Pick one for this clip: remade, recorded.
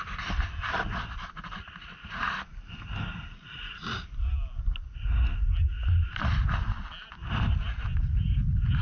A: recorded